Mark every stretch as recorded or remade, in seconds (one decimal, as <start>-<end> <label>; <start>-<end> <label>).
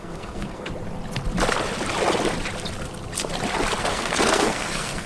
0.0-0.7 remade; 0.7-3.8 recorded; 3.8-5.1 remade